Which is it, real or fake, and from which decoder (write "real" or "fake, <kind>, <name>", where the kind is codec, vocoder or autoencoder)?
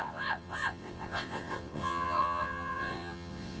fake, vocoder, WaveNeXt